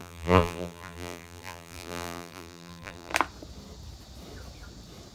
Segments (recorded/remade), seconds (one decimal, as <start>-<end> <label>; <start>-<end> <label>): 0.0-3.1 remade; 3.1-5.1 recorded